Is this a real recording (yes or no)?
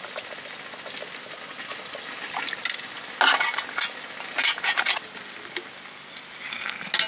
yes